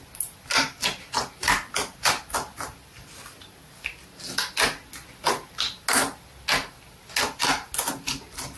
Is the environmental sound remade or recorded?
recorded